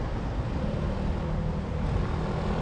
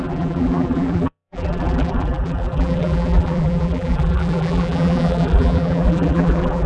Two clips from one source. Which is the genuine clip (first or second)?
first